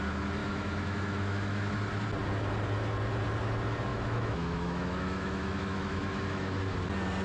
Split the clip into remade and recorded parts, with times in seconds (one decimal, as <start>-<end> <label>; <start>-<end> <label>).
0.0-0.4 recorded; 0.4-1.7 remade; 1.7-3.9 recorded; 3.9-6.6 remade; 6.6-7.2 recorded